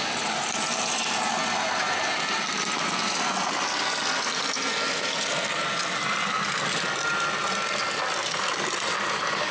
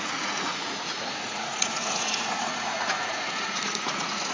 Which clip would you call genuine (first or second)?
first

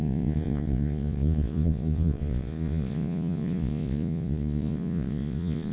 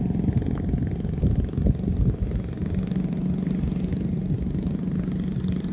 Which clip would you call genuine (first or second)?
second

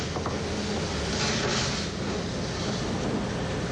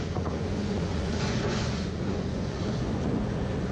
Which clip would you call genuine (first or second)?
first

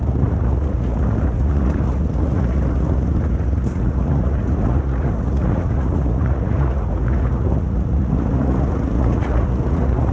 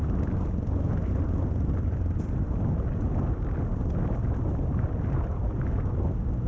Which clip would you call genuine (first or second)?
second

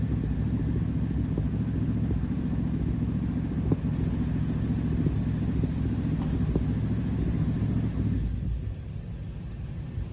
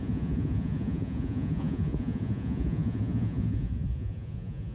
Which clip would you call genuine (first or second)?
first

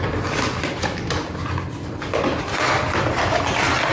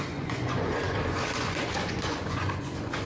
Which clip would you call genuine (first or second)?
first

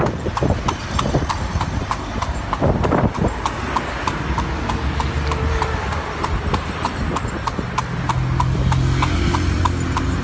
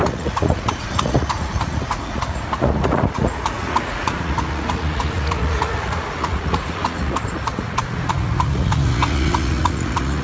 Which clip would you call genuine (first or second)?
first